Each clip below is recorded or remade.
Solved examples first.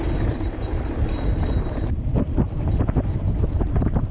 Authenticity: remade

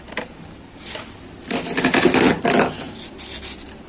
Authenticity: recorded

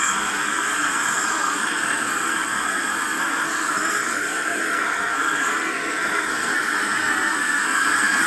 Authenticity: remade